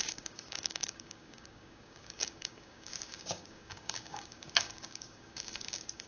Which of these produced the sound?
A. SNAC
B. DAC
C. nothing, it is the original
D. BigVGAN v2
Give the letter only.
B